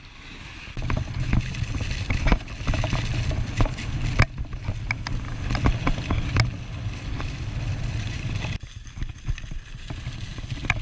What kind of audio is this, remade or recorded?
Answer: recorded